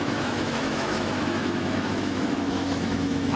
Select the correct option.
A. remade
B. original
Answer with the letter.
A